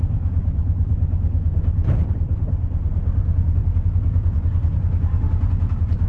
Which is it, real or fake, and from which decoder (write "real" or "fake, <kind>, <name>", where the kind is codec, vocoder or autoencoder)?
fake, vocoder, Vocos